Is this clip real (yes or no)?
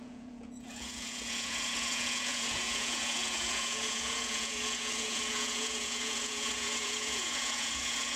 no